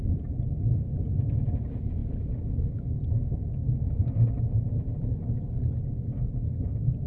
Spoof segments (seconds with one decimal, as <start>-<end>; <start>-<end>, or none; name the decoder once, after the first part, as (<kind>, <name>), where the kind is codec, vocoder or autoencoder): none